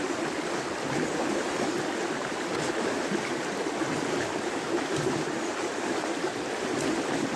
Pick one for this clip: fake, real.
real